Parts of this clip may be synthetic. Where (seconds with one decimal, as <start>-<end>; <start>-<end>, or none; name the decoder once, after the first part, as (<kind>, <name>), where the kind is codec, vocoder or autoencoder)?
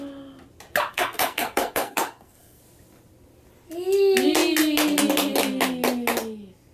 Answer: 0.9-2.6 (codec, SNAC)